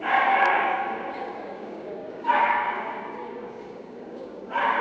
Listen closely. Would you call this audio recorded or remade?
remade